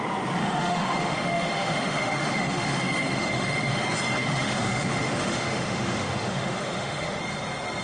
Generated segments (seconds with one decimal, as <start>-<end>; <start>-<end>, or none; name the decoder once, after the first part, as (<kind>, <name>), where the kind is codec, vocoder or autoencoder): 0.4-3.8 (autoencoder, DAC-VAE); 4.2-7.2